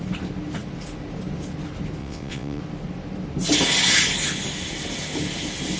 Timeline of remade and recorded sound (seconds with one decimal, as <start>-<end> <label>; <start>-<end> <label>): 0.0-2.0 recorded; 2.0-2.6 remade; 2.6-5.8 recorded